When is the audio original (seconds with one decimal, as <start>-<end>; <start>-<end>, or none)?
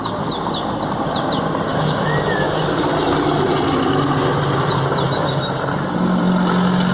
0.0-1.7; 2.6-6.9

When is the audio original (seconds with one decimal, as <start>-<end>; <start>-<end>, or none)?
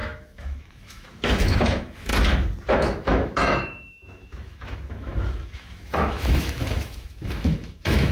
2.1-2.7